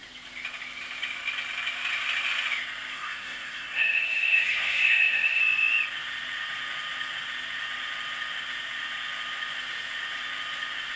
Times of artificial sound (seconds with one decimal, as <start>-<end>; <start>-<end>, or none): 2.9-5.4